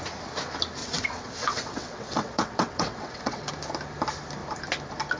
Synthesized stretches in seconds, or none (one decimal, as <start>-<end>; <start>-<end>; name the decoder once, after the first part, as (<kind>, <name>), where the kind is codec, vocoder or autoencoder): 0.8-3.5 (vocoder, WaveNeXt)